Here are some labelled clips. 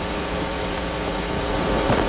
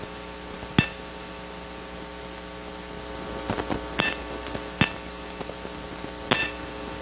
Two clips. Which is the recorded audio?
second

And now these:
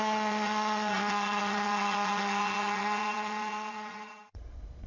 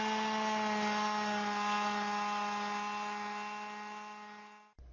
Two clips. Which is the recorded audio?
second